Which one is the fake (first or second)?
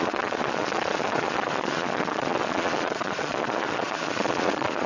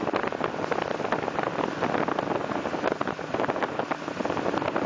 first